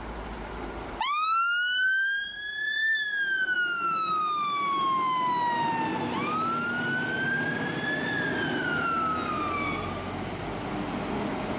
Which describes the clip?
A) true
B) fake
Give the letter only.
A